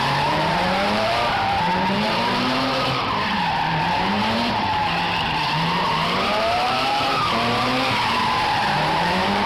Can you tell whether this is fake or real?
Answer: fake